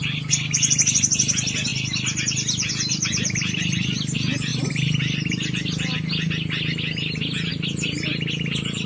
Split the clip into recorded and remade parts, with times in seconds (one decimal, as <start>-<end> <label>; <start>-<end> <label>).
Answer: 0.0-8.9 recorded